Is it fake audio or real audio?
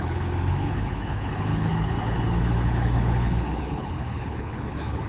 fake